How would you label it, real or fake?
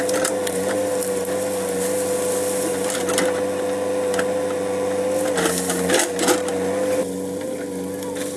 real